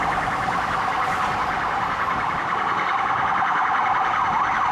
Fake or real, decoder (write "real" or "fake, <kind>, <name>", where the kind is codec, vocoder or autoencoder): real